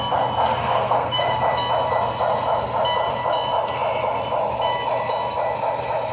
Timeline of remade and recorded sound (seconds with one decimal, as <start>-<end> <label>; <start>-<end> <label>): 0.0-0.5 recorded; 0.5-1.4 remade; 1.4-6.1 recorded